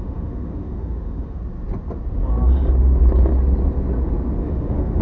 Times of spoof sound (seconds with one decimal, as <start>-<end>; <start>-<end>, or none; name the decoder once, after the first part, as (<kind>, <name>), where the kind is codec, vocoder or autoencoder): 0.0-1.4 (autoencoder, DAC-VAE); 4.4-5.0